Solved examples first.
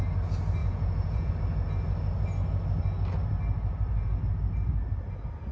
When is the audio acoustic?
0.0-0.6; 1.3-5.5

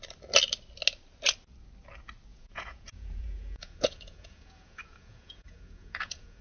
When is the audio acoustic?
0.0-2.3

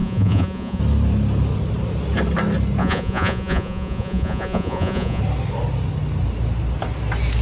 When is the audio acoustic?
0.8-2.8; 5.2-7.4

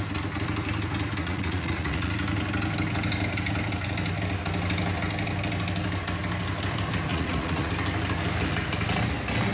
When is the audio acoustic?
0.0-1.2; 2.1-7.1; 7.7-9.5

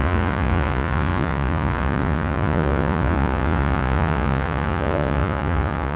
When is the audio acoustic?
none